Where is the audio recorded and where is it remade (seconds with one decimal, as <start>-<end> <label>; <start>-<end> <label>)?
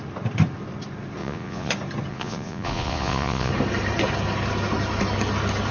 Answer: 0.0-1.2 recorded; 1.2-1.7 remade; 1.7-2.1 recorded; 2.1-3.5 remade; 3.5-5.7 recorded